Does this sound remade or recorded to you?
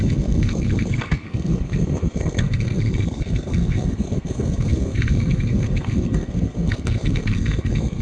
remade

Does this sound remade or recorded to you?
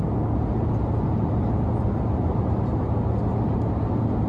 recorded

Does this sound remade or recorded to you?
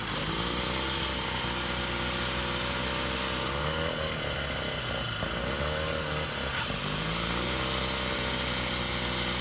recorded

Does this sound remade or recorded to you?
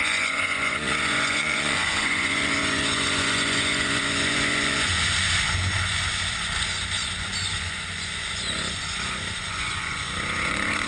remade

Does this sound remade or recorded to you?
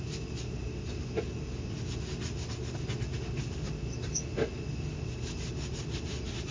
recorded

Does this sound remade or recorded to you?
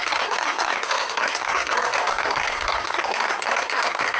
remade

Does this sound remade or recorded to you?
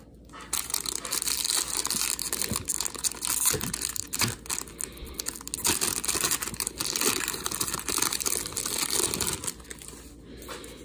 recorded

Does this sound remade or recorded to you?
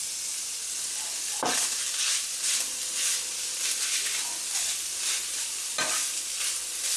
recorded